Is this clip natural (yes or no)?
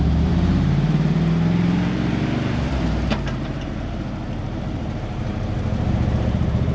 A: no